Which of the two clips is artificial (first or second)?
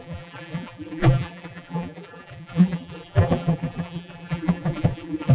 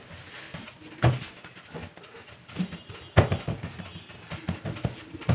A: first